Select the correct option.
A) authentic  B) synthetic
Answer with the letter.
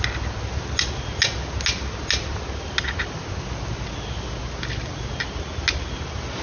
A